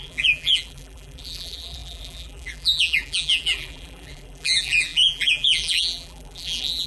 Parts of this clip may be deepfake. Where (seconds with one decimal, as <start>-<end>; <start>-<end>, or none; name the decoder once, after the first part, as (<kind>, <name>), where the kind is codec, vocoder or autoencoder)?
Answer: 0.0-6.9 (vocoder, BigVGAN v2)